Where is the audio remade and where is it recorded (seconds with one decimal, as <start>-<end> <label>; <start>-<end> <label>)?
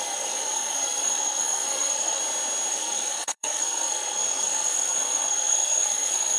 0.0-2.2 remade; 2.2-2.7 recorded; 2.7-6.4 remade